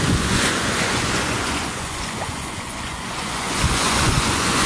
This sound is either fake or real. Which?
fake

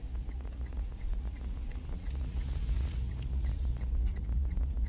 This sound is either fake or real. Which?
fake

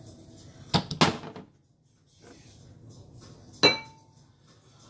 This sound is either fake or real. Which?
real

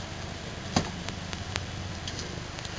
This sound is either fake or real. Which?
real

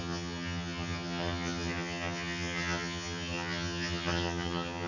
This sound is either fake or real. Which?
fake